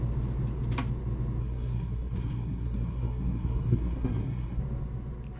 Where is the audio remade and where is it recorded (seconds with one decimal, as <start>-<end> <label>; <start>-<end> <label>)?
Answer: 0.0-1.4 recorded; 1.4-4.6 remade; 4.6-5.4 recorded